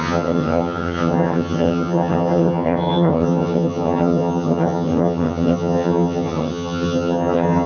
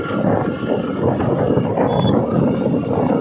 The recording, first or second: second